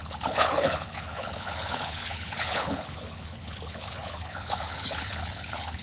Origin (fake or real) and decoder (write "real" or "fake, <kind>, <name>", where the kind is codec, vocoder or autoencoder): fake, codec, HILCodec